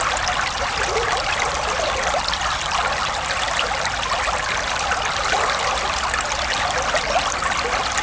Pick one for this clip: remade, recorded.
recorded